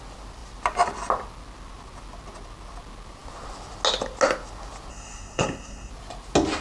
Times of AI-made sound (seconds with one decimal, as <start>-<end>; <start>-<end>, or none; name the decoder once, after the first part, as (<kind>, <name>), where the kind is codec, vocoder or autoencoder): 4.9-5.9 (codec, SNAC)

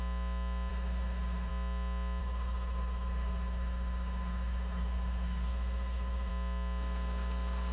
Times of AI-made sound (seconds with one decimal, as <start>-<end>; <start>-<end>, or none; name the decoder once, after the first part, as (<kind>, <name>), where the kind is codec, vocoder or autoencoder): 0.7-1.5 (codec, HILCodec); 2.2-6.3

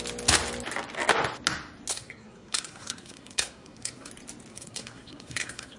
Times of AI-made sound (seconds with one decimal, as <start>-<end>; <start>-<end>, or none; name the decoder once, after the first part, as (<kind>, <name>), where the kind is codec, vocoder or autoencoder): 1.9-4.1 (codec, SNAC); 4.5-5.8

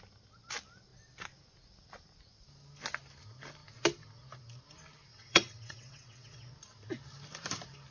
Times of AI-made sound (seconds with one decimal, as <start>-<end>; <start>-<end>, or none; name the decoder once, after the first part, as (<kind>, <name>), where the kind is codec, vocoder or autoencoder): 5.1-6.5 (vocoder, WaveNeXt)

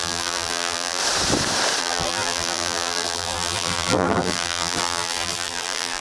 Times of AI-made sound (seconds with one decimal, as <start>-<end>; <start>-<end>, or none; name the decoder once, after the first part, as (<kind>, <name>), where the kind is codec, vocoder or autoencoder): 0.0-1.0 (vocoder, BigVGAN v2); 1.8-6.0

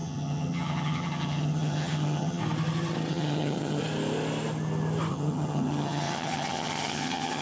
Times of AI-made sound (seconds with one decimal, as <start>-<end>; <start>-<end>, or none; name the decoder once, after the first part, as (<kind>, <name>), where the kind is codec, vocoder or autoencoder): 0.0-2.4 (vocoder, HiFi-GAN); 3.1-3.8; 5.1-7.4